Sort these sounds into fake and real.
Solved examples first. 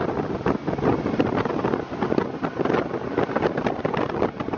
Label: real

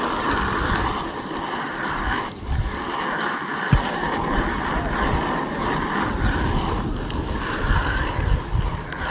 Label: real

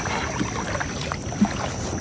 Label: real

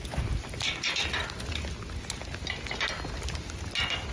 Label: real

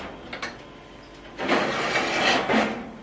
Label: real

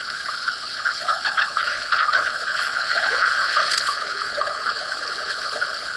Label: fake